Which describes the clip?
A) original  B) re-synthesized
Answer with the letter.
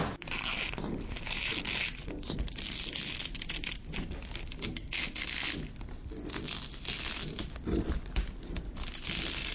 A